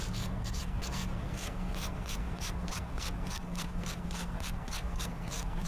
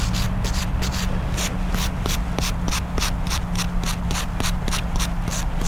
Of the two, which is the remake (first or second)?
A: first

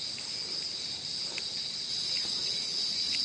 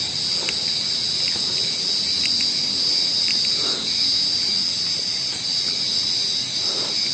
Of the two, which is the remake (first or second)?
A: first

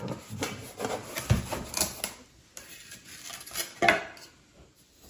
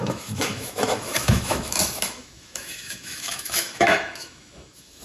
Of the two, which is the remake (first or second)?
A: second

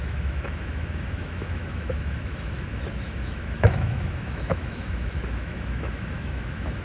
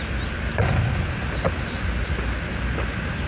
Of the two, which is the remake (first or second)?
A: first